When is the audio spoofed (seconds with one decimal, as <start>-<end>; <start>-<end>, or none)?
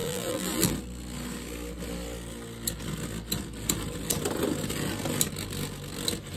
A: 0.0-0.7